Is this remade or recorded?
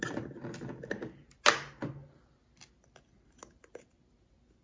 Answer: recorded